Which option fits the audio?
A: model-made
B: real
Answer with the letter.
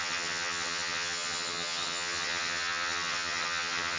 A